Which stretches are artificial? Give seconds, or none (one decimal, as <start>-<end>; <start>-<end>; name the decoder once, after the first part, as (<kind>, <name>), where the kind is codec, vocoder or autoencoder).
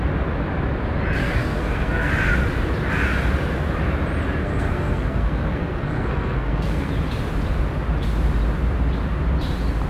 1.2-2.1 (codec, SNAC); 4.4-6.9